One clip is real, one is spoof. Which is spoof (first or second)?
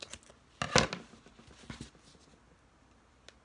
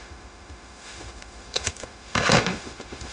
second